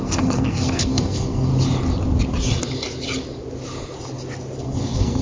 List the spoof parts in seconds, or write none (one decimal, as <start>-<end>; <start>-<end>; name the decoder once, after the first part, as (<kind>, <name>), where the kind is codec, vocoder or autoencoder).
0.0-1.5 (codec, SNAC); 4.6-5.2